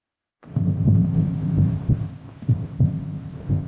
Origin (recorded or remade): remade